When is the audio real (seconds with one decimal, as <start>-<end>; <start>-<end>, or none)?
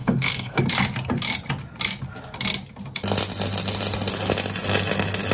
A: 0.6-5.3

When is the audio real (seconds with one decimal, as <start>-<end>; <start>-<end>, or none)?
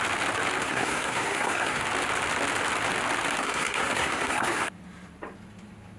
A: 0.0-0.6; 1.8-3.4; 4.7-6.0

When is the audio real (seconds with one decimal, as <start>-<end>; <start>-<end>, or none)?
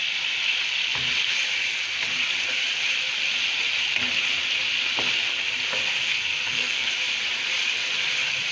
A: 0.0-6.1; 6.9-8.5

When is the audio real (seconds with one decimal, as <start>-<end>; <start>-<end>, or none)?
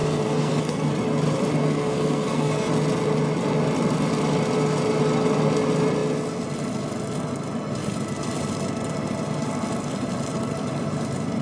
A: 0.9-1.6; 2.7-11.4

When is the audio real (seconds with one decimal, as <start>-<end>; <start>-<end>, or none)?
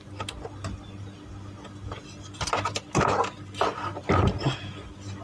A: 0.0-5.2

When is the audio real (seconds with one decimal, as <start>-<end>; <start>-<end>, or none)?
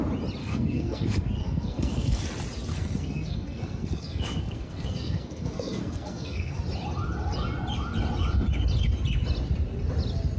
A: 0.0-0.4; 2.2-2.7; 6.6-10.4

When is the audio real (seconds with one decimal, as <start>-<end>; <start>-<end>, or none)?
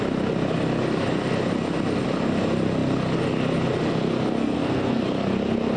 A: 0.0-4.4; 5.0-5.8